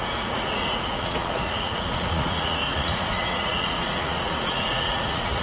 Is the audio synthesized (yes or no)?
yes